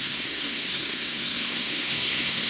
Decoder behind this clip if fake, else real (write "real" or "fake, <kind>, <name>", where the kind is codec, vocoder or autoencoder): fake, codec, SNAC